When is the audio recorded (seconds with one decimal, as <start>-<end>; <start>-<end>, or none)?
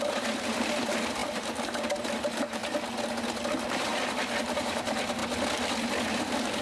2.6-3.5; 3.9-4.4; 5.2-6.1